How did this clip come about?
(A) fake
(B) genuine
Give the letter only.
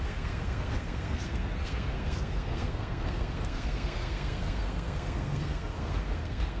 A